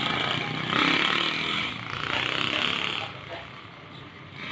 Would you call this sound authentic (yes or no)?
yes